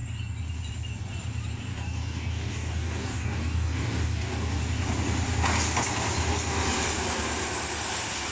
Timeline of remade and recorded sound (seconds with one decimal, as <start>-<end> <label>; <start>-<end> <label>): 0.0-1.7 recorded; 1.7-4.6 remade; 4.6-8.3 recorded